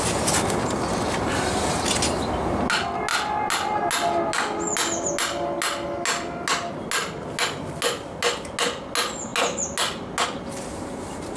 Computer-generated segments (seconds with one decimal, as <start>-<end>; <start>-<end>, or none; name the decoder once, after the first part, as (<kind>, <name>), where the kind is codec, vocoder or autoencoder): none